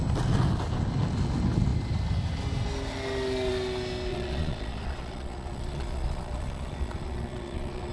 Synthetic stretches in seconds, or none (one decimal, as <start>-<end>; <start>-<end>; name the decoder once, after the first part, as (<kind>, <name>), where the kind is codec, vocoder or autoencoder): 4.1-7.9 (vocoder, Vocos)